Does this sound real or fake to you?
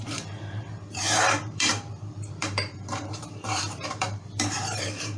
fake